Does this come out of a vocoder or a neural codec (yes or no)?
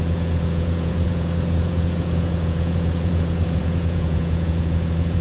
yes